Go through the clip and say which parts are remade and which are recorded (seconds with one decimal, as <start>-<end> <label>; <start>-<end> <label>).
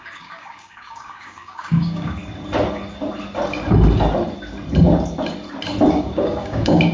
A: 0.0-2.2 remade; 2.2-5.9 recorded; 5.9-6.9 remade